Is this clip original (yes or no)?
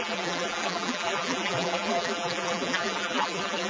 no